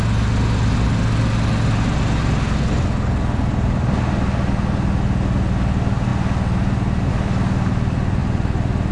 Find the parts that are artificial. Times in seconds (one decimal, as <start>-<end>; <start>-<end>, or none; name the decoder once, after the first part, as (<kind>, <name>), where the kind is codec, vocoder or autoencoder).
none